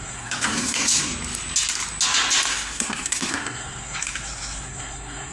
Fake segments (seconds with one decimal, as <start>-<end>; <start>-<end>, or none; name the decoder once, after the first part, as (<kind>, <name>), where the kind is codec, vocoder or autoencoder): 0.0-1.1 (codec, SNAC); 2.5-5.3